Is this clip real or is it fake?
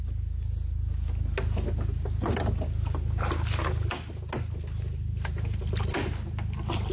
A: real